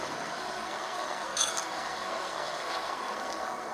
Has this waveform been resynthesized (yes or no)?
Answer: yes